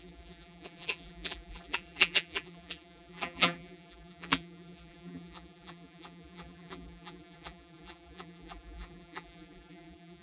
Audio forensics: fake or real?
fake